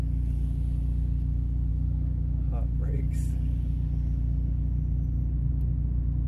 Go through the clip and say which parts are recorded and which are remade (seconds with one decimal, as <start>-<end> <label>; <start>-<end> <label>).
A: 0.0-6.3 recorded